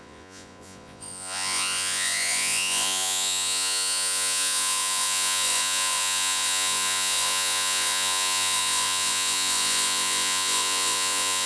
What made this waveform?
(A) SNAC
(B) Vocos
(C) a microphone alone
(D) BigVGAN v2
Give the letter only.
B